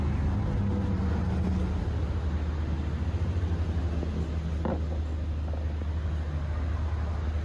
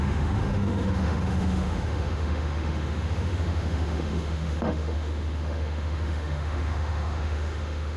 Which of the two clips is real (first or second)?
first